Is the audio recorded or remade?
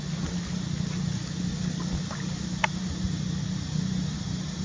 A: recorded